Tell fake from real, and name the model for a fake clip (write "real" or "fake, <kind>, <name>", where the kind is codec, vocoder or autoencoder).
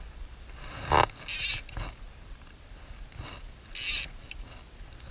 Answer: real